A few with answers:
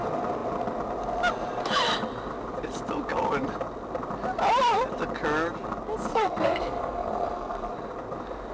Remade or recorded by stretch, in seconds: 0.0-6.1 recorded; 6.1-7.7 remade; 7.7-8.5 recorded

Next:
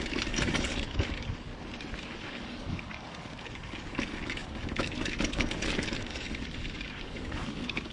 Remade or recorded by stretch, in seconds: 0.0-1.5 remade; 1.5-2.0 recorded; 2.0-7.9 remade